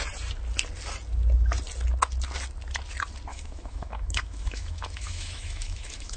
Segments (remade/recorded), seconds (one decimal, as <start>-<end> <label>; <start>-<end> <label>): 0.0-3.3 recorded; 3.3-6.2 remade